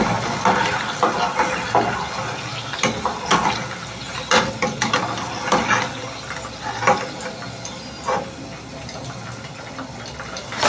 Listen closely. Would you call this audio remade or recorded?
recorded